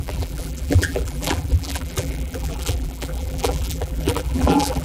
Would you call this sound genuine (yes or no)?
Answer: no